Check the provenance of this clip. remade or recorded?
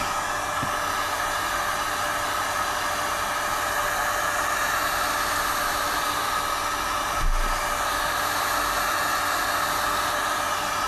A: recorded